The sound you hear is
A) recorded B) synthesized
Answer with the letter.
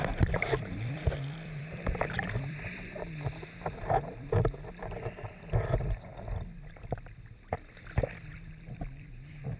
B